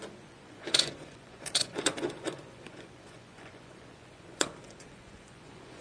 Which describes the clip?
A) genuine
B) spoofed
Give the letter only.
B